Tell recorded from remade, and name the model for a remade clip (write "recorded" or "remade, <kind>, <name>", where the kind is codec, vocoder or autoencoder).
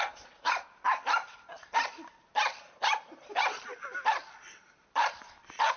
recorded